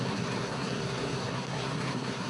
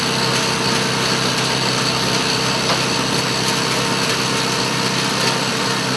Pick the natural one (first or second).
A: second